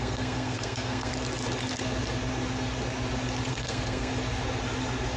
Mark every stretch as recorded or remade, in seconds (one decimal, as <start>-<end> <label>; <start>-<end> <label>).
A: 0.0-1.1 remade; 1.1-3.5 recorded; 3.5-4.1 remade; 4.1-5.2 recorded

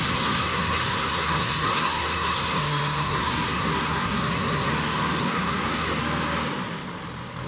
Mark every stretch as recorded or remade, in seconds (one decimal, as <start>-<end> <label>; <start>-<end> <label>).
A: 0.0-4.7 remade; 4.7-5.2 recorded; 5.2-6.0 remade; 6.0-7.5 recorded

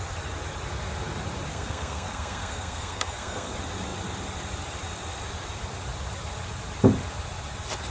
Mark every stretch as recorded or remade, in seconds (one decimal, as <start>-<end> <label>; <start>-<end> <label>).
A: 0.0-1.5 recorded; 1.5-3.5 remade; 3.5-7.9 recorded

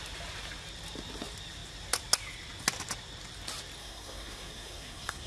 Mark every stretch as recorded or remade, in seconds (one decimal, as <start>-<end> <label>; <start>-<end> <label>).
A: 0.0-3.8 recorded; 3.8-5.3 remade

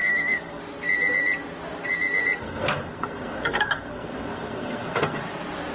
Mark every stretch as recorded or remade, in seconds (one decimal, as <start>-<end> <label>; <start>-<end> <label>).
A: 0.0-0.6 remade; 0.6-2.4 recorded; 2.4-5.2 remade; 5.2-5.7 recorded

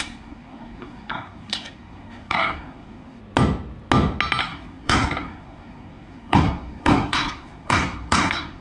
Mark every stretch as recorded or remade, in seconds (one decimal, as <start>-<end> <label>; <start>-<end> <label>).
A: 0.0-3.2 remade; 3.2-4.4 recorded; 4.4-8.6 remade